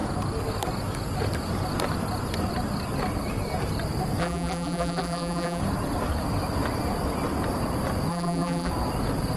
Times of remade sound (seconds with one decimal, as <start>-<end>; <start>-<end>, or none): 4.2-5.6; 8.1-8.7